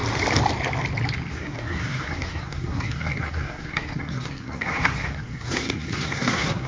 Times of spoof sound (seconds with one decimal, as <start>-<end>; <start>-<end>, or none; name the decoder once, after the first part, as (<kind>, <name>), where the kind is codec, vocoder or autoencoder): 1.3-6.7 (codec, SNAC)